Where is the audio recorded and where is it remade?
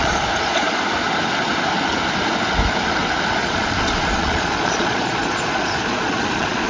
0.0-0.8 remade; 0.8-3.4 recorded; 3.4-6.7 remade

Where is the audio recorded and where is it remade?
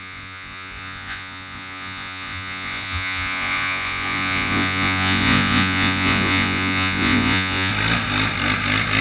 0.0-7.7 remade; 7.7-9.0 recorded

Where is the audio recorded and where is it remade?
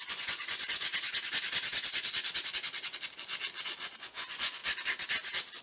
0.0-0.9 remade; 0.9-3.6 recorded; 3.6-4.6 remade; 4.6-5.6 recorded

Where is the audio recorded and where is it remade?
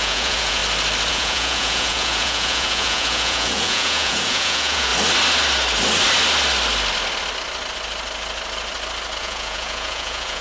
0.0-0.6 remade; 0.6-1.1 recorded; 1.1-4.9 remade; 4.9-9.2 recorded; 9.2-10.4 remade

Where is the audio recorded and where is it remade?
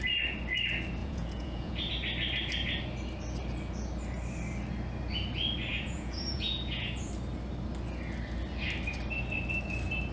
0.0-1.0 recorded; 1.0-1.9 remade; 1.9-5.7 recorded; 5.7-7.1 remade; 7.1-10.1 recorded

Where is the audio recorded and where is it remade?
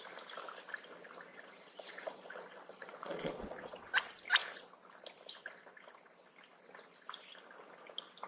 0.0-1.3 recorded; 1.3-3.8 remade; 3.8-8.3 recorded